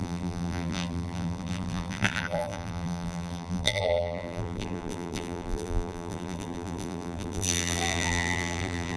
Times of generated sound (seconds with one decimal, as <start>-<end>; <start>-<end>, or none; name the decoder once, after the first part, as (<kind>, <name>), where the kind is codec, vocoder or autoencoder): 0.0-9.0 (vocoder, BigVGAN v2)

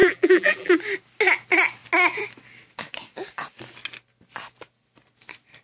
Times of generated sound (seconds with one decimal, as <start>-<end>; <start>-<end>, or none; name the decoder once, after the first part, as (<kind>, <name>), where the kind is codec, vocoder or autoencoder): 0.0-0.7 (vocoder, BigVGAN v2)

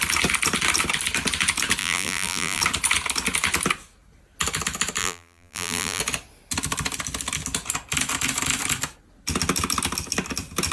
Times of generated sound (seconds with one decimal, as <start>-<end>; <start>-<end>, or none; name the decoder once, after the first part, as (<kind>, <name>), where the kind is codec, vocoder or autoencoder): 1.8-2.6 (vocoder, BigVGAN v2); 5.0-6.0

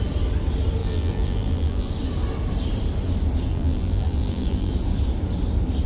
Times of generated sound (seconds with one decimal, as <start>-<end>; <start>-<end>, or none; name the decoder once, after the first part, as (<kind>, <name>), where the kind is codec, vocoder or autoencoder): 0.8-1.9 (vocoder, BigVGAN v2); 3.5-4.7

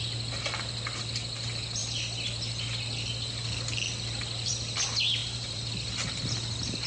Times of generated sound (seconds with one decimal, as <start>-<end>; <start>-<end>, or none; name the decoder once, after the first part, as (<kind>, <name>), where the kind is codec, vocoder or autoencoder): 5.2-5.7 (vocoder, BigVGAN v2)

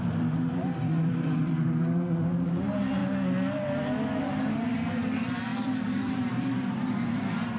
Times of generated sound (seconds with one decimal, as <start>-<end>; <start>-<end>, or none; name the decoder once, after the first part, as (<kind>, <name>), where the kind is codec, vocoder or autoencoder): 0.0-3.0 (vocoder, BigVGAN v2); 4.2-7.6

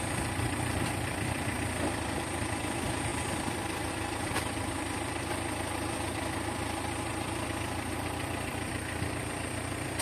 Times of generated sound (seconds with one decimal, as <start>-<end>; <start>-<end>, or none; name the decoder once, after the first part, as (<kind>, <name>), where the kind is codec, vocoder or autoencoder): 0.0-10.0 (vocoder, BigVGAN v2)